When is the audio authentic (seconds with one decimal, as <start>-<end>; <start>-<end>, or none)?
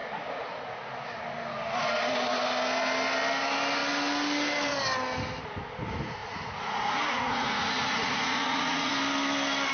0.8-6.2; 8.9-9.7